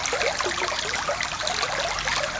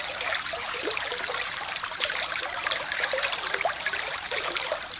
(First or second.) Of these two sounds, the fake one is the second